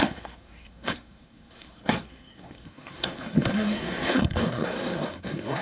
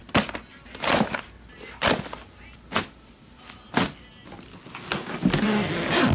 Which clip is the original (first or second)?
second